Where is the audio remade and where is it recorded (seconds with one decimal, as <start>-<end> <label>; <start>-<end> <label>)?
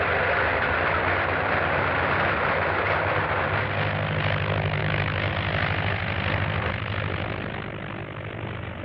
0.0-4.8 recorded; 4.8-5.3 remade; 5.3-8.8 recorded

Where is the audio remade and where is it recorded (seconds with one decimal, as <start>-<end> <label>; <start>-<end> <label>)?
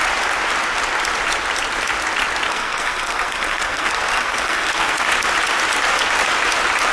0.0-2.5 recorded; 2.5-5.0 remade; 5.0-6.9 recorded